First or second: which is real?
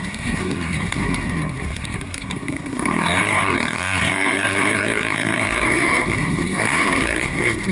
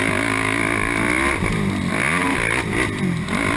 second